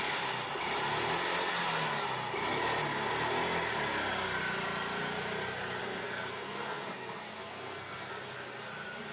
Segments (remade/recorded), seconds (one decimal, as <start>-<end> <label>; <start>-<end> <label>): 0.0-5.8 recorded; 5.8-8.1 remade; 8.1-9.1 recorded